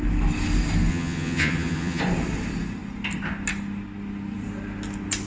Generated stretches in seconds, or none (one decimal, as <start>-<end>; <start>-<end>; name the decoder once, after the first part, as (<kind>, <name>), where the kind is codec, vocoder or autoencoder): 0.9-2.0 (vocoder, HiFi-GAN)